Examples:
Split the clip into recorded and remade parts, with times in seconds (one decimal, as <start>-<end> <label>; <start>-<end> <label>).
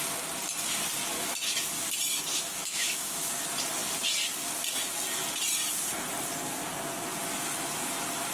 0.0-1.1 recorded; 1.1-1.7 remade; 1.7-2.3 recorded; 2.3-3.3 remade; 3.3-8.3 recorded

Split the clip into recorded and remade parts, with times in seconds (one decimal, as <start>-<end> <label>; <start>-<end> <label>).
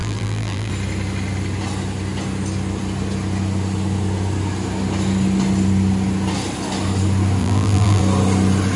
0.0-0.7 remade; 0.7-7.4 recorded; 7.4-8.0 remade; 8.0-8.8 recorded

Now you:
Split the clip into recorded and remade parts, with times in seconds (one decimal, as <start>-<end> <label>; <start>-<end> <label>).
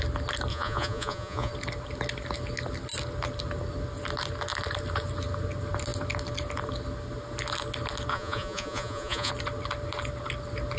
0.0-0.5 recorded; 0.5-1.5 remade; 1.5-8.1 recorded; 8.1-9.3 remade; 9.3-10.8 recorded